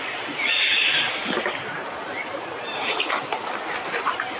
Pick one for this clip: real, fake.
real